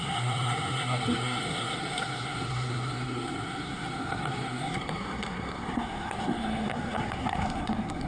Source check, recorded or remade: remade